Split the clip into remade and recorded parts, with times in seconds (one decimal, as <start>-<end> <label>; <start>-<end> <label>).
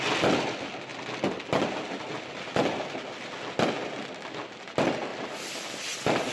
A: 0.0-6.3 recorded